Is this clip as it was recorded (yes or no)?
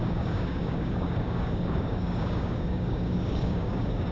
no